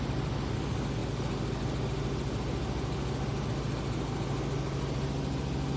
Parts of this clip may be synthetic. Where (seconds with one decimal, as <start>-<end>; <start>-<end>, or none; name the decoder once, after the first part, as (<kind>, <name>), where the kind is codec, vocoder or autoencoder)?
none